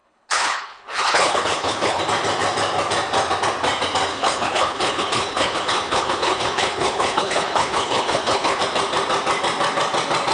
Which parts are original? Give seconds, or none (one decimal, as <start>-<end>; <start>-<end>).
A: 2.0-4.1; 8.6-10.3